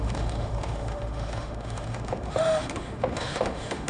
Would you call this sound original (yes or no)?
no